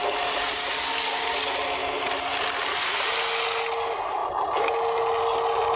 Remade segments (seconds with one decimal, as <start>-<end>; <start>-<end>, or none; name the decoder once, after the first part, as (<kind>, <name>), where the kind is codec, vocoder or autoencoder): none